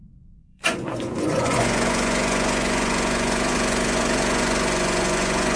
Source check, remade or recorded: remade